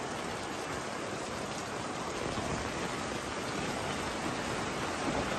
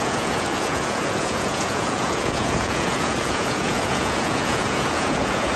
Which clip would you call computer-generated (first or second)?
second